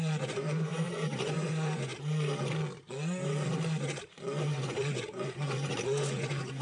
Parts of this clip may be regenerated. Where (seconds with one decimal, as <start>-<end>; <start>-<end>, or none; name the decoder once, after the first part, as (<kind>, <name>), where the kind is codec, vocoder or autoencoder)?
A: 0.0-1.9 (vocoder, Vocos); 4.4-6.6